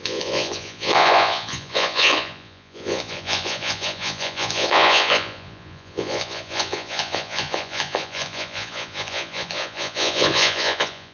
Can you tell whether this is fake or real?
fake